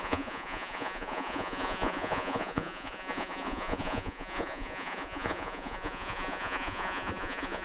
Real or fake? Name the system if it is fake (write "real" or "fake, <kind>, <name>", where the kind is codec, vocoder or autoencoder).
fake, vocoder, Vocos